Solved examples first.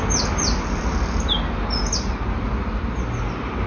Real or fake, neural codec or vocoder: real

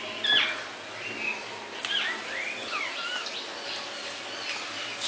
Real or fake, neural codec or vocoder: real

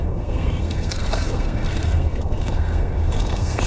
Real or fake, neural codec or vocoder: fake, codec, SNAC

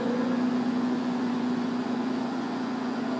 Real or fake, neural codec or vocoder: fake, vocoder, Vocos